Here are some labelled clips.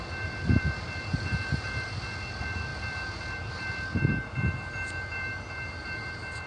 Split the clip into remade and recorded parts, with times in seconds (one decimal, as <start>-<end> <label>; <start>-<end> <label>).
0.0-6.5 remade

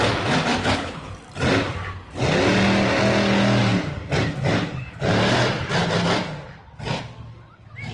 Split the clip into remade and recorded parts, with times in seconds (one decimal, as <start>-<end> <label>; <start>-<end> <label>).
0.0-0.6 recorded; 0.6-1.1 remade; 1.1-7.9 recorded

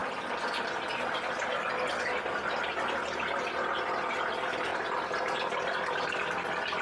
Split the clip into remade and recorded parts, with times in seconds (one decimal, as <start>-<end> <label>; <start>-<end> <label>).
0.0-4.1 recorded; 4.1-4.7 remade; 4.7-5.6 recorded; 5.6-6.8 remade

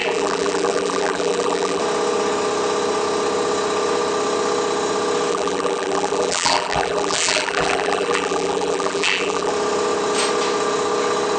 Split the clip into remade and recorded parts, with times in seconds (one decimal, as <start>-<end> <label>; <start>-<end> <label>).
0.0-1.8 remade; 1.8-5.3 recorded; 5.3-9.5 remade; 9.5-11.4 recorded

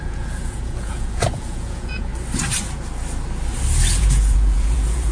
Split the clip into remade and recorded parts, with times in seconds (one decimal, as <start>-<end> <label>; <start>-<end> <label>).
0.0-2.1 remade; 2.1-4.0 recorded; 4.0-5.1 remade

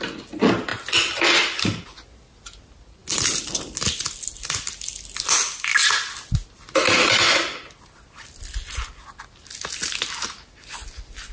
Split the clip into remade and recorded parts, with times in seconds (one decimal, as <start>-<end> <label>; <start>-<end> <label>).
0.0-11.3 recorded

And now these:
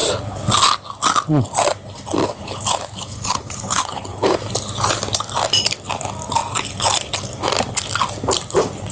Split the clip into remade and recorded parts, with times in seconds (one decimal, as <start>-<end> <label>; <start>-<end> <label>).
0.0-2.2 recorded; 2.2-4.4 remade; 4.4-8.9 recorded

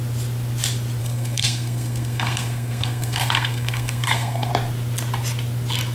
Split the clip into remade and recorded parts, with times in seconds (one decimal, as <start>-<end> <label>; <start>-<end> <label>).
0.0-1.0 recorded; 1.0-4.5 remade; 4.5-5.9 recorded